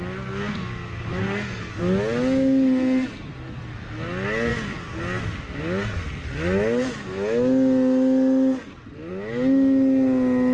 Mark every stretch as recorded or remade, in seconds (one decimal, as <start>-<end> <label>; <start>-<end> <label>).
0.0-1.2 recorded; 1.2-1.7 remade; 1.7-10.5 recorded

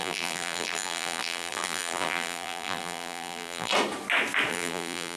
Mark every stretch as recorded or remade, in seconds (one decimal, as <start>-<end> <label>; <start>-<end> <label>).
0.0-3.7 remade; 3.7-4.5 recorded; 4.5-5.2 remade

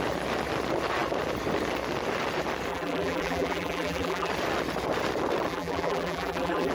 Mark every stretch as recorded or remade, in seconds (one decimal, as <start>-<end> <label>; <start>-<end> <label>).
0.0-2.7 recorded; 2.7-4.3 remade; 4.3-5.5 recorded; 5.5-6.7 remade

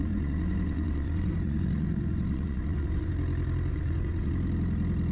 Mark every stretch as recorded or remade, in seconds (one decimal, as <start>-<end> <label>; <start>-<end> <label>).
0.0-3.1 remade; 3.1-3.7 recorded; 3.7-4.3 remade; 4.3-5.1 recorded

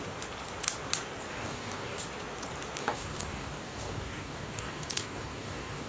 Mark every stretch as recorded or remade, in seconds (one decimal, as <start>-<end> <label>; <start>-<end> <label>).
0.0-1.3 recorded; 1.3-2.0 remade; 2.0-2.8 recorded; 2.8-5.9 remade

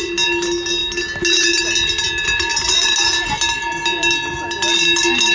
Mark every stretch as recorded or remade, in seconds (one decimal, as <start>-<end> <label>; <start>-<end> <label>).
0.0-5.3 recorded

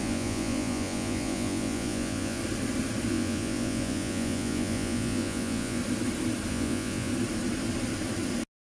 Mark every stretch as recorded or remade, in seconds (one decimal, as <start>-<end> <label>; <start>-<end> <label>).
0.0-2.4 remade; 2.4-3.1 recorded; 3.1-5.8 remade; 5.8-6.5 recorded; 6.5-7.1 remade; 7.1-8.8 recorded